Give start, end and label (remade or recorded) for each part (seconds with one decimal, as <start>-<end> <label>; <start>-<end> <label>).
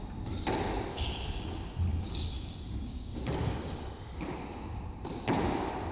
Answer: 0.0-0.9 recorded; 0.9-1.5 remade; 1.5-1.9 recorded; 1.9-4.3 remade; 4.3-5.9 recorded